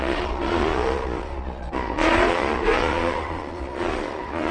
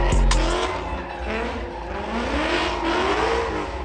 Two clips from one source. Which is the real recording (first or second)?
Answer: second